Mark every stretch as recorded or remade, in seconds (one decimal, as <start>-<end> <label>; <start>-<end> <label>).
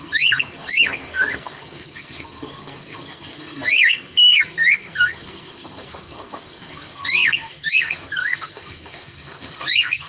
0.0-10.1 remade